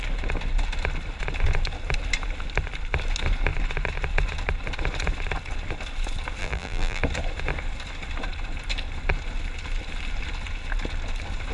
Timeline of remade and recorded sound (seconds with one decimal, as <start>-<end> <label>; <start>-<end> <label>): 0.0-6.4 recorded; 6.4-7.0 remade; 7.0-11.5 recorded